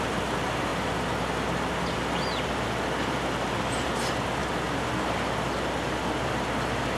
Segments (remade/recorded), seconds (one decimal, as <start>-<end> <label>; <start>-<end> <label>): 0.0-7.0 recorded